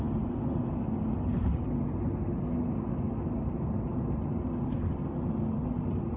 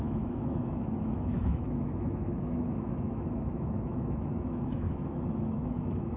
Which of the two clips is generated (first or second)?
second